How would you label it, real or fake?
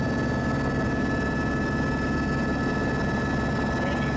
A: real